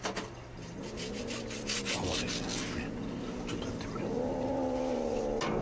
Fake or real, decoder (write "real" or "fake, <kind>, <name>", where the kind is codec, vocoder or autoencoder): real